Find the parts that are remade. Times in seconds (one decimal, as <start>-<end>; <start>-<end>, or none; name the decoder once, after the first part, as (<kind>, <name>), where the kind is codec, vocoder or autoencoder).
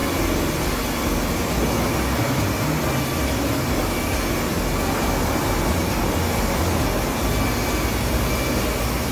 none